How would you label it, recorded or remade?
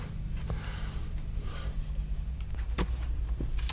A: remade